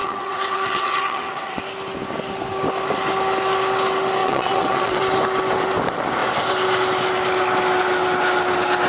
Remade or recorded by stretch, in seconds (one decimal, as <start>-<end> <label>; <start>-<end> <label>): 0.0-1.6 remade; 1.6-4.2 recorded; 4.2-5.0 remade; 5.0-8.9 recorded